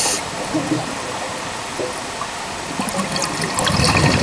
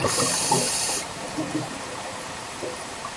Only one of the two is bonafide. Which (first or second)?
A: first